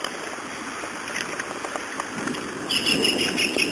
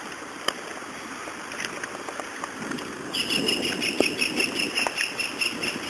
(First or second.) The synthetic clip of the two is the second